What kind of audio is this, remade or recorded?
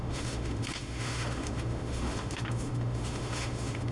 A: remade